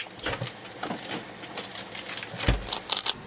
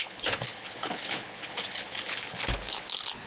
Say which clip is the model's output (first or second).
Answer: second